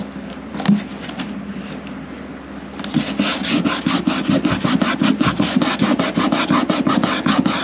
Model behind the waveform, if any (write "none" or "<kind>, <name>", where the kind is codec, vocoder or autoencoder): none